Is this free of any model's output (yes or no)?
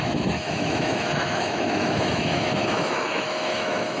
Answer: no